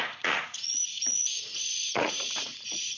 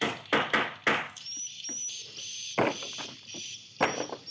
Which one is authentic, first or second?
second